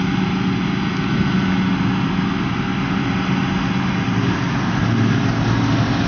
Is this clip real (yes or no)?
yes